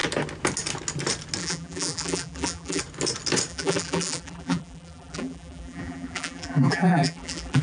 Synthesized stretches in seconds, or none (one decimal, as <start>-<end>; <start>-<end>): 1.4-2.8; 3.5-7.6